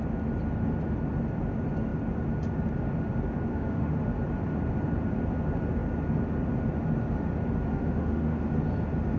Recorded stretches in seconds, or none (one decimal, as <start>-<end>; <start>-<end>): 0.0-3.5; 4.0-7.7; 8.4-9.2